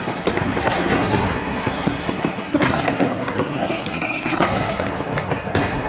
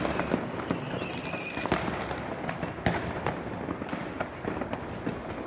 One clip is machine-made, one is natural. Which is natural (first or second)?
second